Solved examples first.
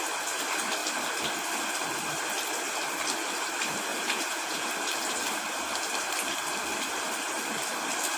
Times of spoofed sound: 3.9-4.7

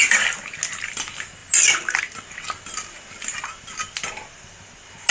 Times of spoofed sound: none

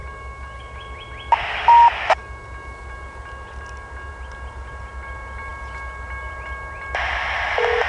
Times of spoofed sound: none

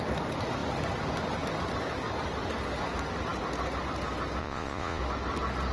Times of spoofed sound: 4.4-5.0

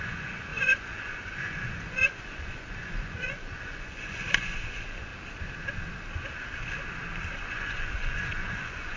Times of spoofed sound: 0.0-5.1; 7.4-9.0

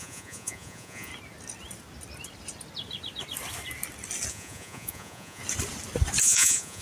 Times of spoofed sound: 0.0-1.1; 4.3-5.4; 6.2-6.8

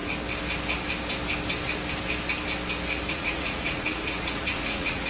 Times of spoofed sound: 3.1-5.1

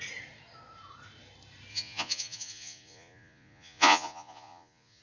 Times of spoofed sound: 1.7-5.0